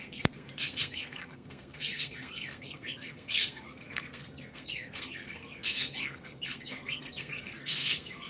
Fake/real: fake